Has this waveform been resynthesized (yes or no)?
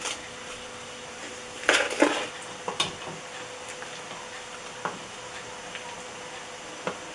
no